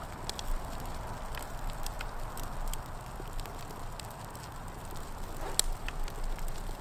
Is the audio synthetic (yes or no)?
no